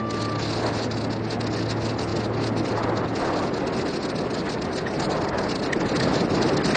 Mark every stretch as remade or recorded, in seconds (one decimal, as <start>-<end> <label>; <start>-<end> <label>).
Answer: 0.0-6.8 recorded